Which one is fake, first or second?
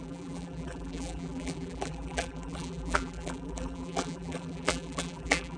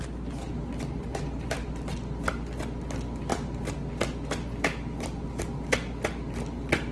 first